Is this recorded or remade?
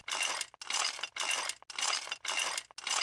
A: recorded